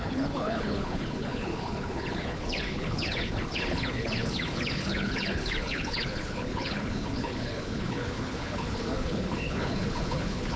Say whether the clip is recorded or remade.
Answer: remade